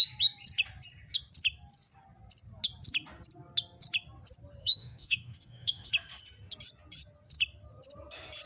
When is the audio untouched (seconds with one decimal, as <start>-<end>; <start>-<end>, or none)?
0.0-4.6; 5.9-8.5